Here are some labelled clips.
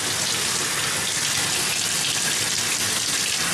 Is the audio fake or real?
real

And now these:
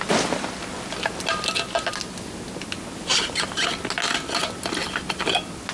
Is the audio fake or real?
real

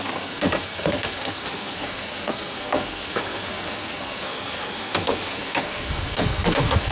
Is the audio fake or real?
fake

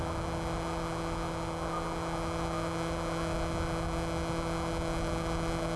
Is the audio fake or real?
real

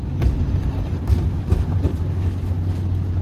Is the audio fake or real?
real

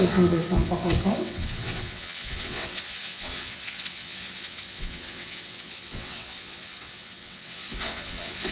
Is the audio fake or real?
fake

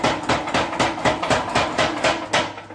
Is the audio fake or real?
real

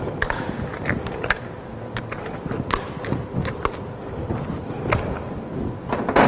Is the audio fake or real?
real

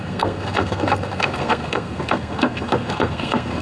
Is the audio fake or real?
fake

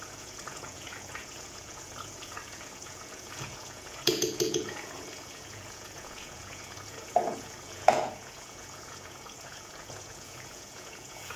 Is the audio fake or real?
fake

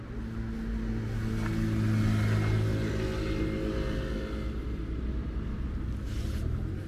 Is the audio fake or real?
real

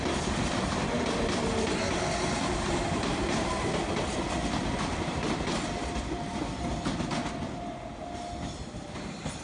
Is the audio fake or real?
real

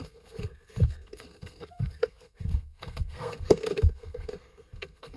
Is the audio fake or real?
fake